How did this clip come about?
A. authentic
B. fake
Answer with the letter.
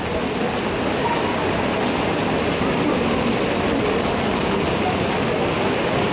A